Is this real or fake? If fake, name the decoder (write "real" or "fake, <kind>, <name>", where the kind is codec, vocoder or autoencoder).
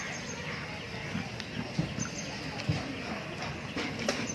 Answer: real